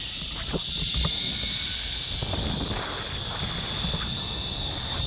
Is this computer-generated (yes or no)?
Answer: no